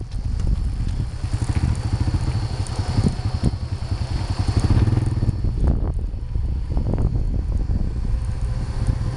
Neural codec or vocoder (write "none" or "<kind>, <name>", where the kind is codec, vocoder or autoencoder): none